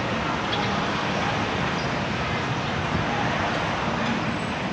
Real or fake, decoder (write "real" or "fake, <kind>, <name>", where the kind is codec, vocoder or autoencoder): real